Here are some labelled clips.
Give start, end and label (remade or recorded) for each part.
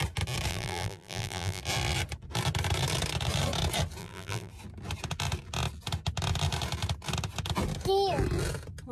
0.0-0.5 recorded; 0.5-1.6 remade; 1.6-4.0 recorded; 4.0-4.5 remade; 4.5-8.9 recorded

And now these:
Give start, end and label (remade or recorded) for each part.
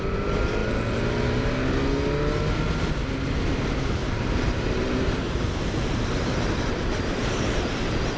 0.0-4.0 recorded; 4.0-7.6 remade; 7.6-8.2 recorded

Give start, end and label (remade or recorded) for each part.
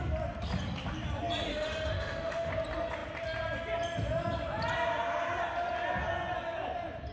0.0-1.5 recorded; 1.5-2.5 remade; 2.5-7.1 recorded